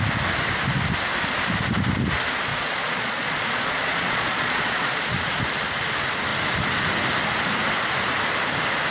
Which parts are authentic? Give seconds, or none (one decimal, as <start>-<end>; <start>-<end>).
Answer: 0.0-2.5; 5.4-8.9